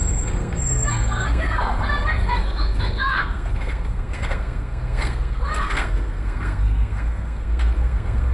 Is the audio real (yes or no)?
no